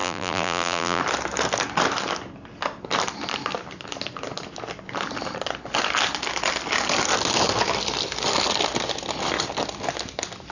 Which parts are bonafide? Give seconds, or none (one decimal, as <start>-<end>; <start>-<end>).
1.0-10.5